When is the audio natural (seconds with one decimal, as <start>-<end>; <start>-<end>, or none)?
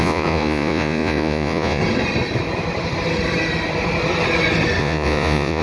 1.8-4.8